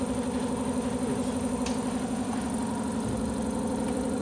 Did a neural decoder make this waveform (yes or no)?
no